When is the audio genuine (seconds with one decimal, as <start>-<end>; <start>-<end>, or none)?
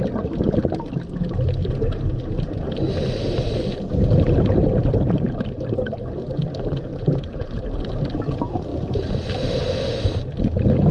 0.0-1.6; 3.5-4.6; 6.2-6.9; 8.0-10.9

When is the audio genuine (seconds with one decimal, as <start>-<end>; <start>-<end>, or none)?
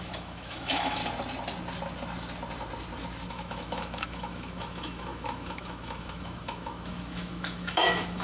1.0-3.3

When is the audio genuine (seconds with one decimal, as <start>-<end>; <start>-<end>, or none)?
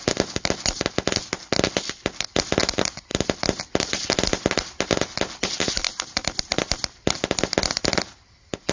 0.0-8.7